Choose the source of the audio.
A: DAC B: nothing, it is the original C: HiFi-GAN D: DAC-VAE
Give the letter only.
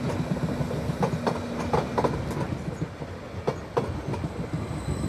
B